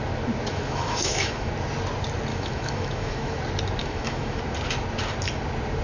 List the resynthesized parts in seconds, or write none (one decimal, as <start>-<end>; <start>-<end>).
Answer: 0.5-1.5; 2.3-3.4; 3.8-4.4